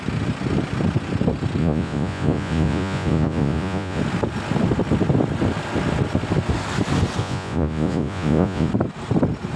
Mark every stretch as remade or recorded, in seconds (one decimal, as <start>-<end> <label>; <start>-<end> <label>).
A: 0.0-1.6 recorded; 1.6-4.0 remade; 4.0-7.2 recorded; 7.2-8.7 remade; 8.7-9.6 recorded

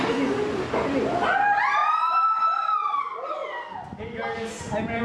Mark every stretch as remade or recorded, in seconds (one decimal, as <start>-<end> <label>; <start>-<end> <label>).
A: 0.0-5.0 recorded

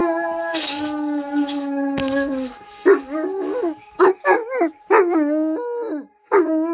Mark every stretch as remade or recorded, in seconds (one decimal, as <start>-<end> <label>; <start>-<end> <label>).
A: 0.0-4.4 remade; 4.4-6.2 recorded; 6.2-6.7 remade

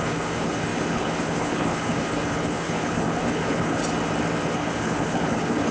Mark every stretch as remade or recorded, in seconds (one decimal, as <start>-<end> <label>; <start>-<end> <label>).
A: 0.0-3.8 remade; 3.8-4.4 recorded; 4.4-5.7 remade

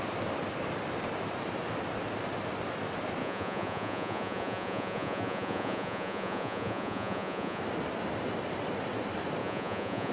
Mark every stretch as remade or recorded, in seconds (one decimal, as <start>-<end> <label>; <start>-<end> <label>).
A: 0.0-3.2 recorded; 3.2-7.6 remade; 7.6-9.4 recorded; 9.4-10.1 remade

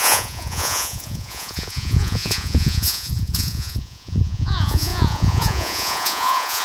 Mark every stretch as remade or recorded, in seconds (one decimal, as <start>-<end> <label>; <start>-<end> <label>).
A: 0.0-6.6 remade

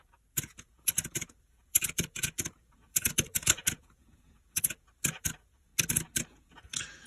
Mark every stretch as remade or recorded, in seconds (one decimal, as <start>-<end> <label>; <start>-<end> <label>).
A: 0.0-5.7 remade; 5.7-6.3 recorded; 6.3-7.1 remade